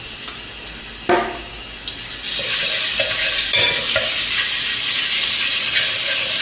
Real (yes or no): yes